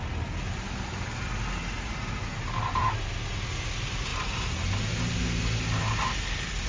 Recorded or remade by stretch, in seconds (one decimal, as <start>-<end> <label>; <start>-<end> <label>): 0.0-6.7 recorded